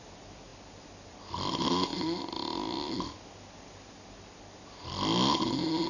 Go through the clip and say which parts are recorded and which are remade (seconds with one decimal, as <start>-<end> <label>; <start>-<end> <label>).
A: 0.0-5.9 recorded